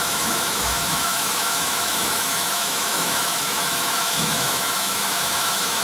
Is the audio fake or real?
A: fake